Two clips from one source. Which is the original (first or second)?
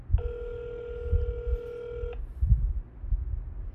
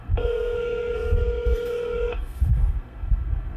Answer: first